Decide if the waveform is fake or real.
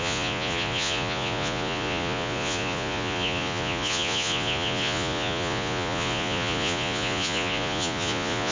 fake